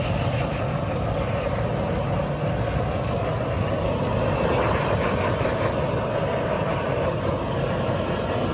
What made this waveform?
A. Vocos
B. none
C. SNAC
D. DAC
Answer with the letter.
B